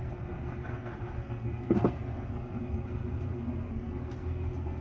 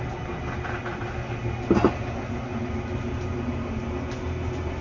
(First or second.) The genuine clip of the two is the second